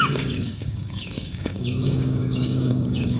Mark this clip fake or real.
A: fake